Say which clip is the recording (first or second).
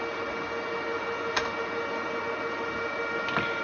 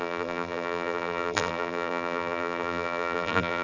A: first